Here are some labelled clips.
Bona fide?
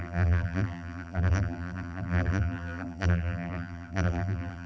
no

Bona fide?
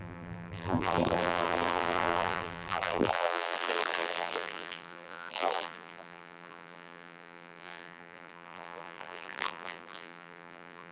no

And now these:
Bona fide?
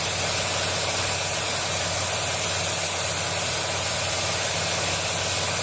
yes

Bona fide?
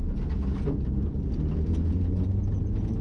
yes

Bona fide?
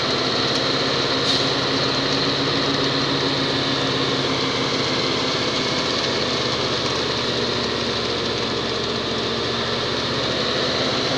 yes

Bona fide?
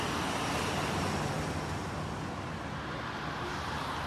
yes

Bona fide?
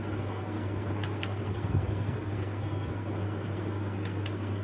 no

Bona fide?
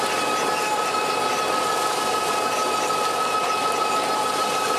yes